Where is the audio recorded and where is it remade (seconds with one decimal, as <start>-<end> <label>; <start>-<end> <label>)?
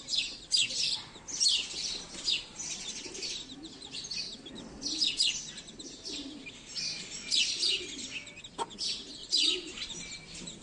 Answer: 0.0-9.2 recorded; 9.2-10.0 remade; 10.0-10.6 recorded